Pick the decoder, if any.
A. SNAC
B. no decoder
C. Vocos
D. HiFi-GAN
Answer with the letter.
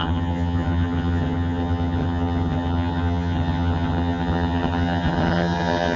D